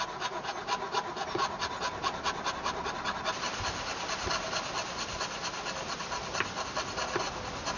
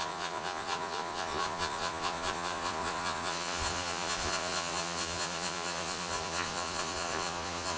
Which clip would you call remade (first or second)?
second